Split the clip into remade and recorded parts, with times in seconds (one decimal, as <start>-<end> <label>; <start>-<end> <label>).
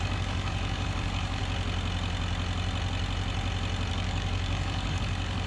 0.0-1.4 remade; 1.4-3.9 recorded; 3.9-5.5 remade